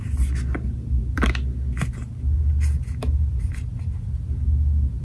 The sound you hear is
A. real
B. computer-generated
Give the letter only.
A